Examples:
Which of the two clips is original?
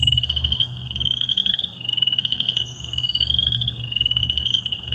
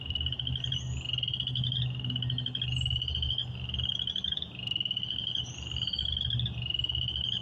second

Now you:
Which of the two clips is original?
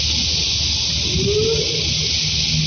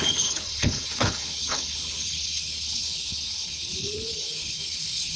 first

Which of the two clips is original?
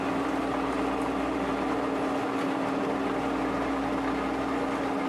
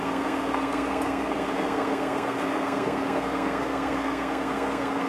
first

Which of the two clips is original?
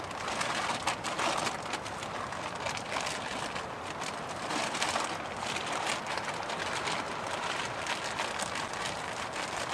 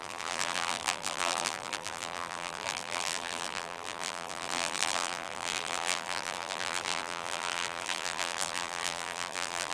first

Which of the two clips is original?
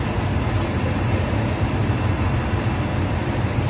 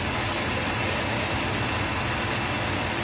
second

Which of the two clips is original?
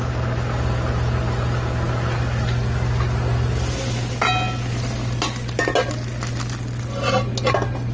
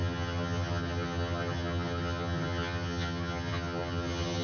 first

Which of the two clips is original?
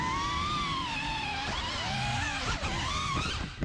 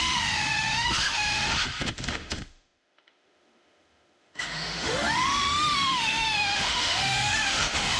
first